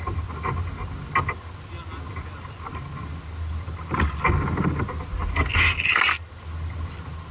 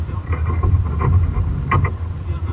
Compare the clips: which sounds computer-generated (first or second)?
second